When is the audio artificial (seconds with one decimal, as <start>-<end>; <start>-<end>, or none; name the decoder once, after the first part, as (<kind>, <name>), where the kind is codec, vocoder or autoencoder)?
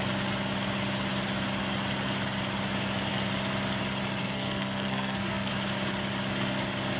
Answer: 4.2-5.5 (codec, SNAC)